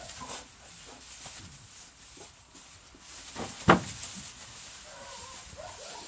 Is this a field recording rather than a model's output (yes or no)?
yes